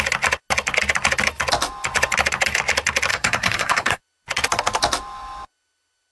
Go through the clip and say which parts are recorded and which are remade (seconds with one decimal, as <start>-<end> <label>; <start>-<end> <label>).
0.0-3.1 recorded; 3.1-4.0 remade; 4.0-6.1 recorded